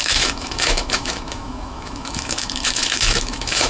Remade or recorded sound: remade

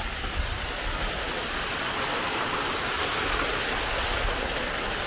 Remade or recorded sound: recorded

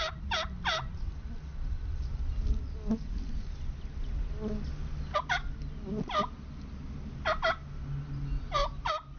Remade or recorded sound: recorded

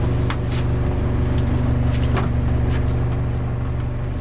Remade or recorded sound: recorded